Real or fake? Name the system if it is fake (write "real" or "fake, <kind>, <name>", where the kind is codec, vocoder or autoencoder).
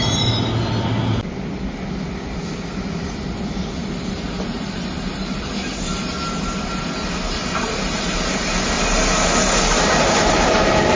real